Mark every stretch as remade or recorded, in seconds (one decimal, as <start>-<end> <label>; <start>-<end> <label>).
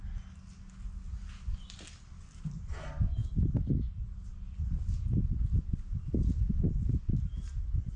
0.0-8.0 recorded